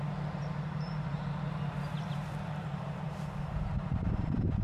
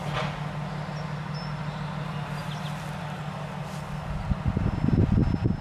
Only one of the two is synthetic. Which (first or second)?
first